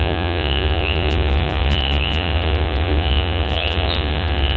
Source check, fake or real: fake